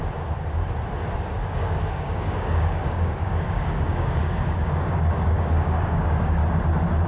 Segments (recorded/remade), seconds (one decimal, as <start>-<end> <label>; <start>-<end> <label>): 0.0-1.3 recorded; 1.3-6.4 remade; 6.4-7.1 recorded